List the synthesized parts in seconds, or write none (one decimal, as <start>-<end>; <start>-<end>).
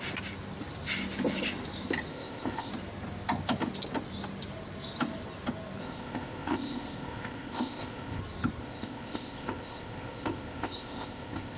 2.1-2.7; 5.8-8.2; 8.6-11.6